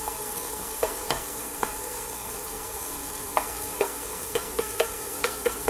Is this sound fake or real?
fake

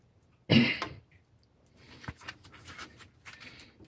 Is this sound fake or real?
real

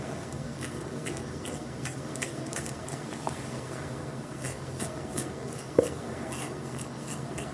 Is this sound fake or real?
fake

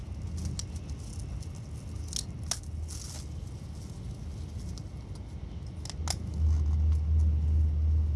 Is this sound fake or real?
real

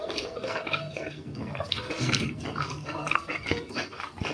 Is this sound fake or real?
fake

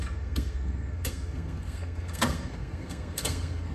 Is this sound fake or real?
fake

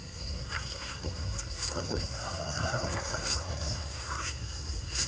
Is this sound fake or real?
fake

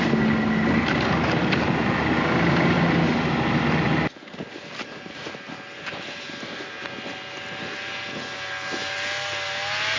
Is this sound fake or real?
real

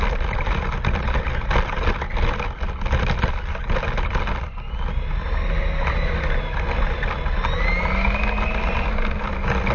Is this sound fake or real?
real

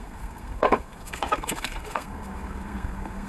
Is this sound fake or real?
fake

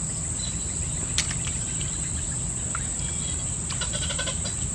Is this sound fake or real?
real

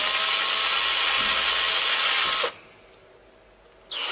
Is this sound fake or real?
real